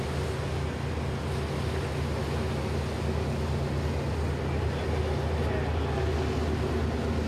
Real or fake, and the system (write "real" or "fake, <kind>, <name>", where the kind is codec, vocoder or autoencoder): real